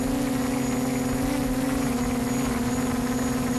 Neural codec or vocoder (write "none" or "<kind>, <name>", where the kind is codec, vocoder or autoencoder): none